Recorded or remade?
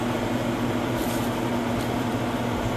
recorded